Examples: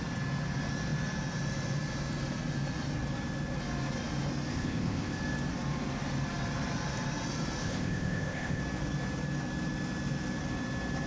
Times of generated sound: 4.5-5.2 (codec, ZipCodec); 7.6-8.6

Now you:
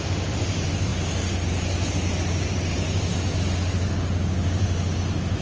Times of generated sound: none

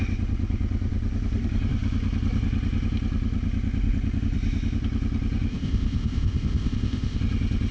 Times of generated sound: 5.5-7.2 (codec, ZipCodec)